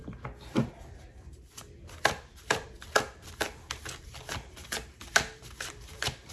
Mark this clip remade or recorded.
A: recorded